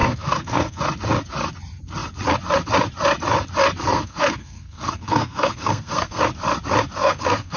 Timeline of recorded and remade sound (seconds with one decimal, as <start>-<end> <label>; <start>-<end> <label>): 0.0-0.8 remade; 0.8-3.9 recorded; 3.9-6.2 remade; 6.2-7.0 recorded; 7.0-7.6 remade